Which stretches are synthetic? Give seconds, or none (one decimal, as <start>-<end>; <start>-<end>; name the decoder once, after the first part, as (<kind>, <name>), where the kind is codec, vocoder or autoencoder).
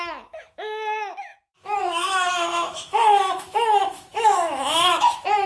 0.0-5.5 (autoencoder, DAC-VAE)